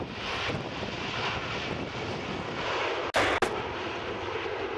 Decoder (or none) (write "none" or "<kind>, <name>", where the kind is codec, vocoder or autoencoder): none